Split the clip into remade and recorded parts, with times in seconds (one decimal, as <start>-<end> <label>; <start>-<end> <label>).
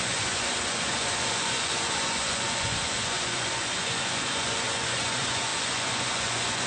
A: 0.0-6.7 remade